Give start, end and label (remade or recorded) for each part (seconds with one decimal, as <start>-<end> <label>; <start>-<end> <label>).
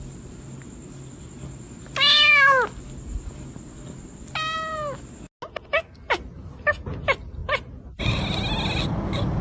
0.0-9.4 recorded